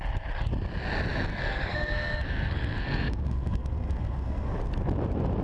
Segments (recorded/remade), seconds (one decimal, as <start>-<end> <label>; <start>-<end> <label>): 0.0-1.3 recorded; 1.3-4.5 remade; 4.5-5.4 recorded